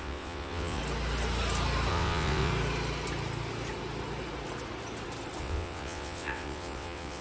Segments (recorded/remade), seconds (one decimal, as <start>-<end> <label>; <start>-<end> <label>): 0.0-0.8 remade; 0.8-1.9 recorded; 1.9-2.5 remade; 2.5-5.4 recorded; 5.4-7.2 remade